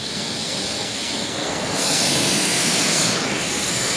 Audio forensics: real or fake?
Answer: fake